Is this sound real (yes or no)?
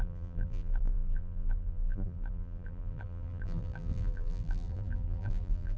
no